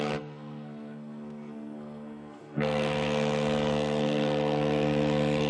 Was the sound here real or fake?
fake